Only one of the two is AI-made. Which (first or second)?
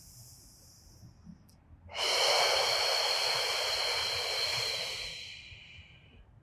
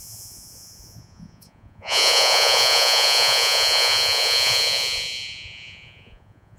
second